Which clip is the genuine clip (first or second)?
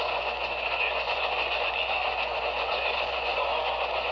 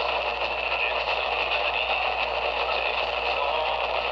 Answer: second